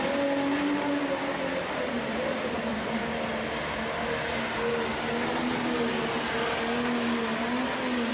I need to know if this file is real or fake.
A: real